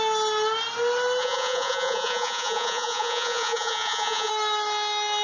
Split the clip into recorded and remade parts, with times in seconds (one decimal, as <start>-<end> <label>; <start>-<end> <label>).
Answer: 0.0-1.2 recorded; 1.2-4.3 remade; 4.3-5.2 recorded